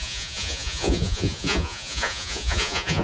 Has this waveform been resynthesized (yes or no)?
yes